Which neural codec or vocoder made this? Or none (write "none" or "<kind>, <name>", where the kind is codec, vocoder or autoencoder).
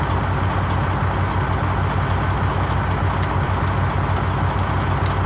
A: none